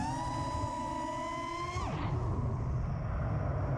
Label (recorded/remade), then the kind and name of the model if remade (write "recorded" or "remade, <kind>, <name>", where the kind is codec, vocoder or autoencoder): recorded